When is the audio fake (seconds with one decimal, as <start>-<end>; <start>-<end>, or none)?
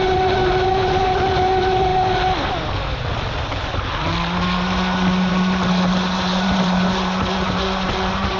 0.0-1.9; 5.3-8.4